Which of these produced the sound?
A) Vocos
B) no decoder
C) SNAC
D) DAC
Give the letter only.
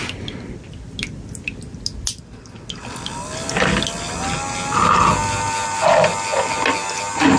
B